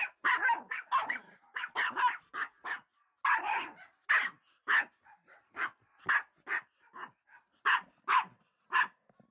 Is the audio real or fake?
real